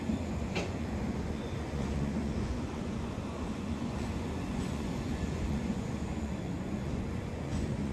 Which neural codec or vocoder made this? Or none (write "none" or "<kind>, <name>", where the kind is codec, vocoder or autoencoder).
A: vocoder, Vocos